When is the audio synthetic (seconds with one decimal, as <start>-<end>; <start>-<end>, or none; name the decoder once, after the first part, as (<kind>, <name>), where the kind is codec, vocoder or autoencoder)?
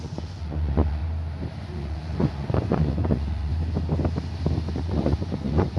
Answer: 0.0-1.0 (vocoder, Vocos); 1.6-3.5; 4.8-5.8